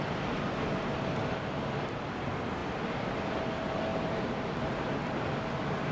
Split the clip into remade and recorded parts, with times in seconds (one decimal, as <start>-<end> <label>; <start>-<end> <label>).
0.0-3.9 recorded; 3.9-4.8 remade; 4.8-5.9 recorded